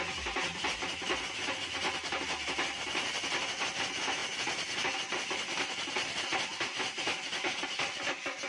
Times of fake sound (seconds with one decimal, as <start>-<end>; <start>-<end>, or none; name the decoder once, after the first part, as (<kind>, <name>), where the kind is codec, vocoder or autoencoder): none